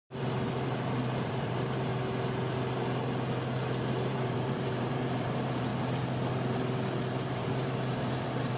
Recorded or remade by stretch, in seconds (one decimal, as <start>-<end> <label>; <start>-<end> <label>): 0.0-1.9 remade; 1.9-4.1 recorded; 4.1-5.7 remade; 5.7-7.3 recorded; 7.3-8.6 remade